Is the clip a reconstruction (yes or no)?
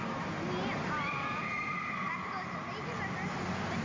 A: no